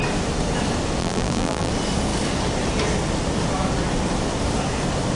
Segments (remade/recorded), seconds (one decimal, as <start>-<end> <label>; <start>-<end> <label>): 0.0-1.0 recorded; 1.0-1.7 remade; 1.7-5.2 recorded